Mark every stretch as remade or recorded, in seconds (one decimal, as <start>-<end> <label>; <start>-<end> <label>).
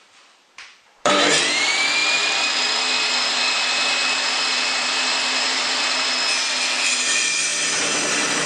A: 0.0-0.7 recorded; 0.7-1.4 remade; 1.4-2.0 recorded; 2.0-6.1 remade; 6.1-8.5 recorded